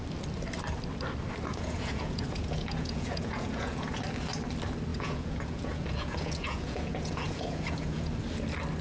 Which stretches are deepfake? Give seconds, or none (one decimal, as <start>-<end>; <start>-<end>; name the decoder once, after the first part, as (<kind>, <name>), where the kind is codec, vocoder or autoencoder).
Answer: 1.5-4.0 (vocoder, Vocos); 4.9-8.1